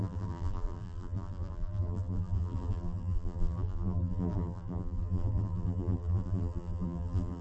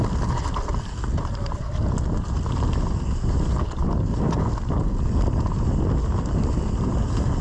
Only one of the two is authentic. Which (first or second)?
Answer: second